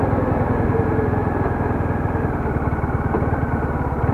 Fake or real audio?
real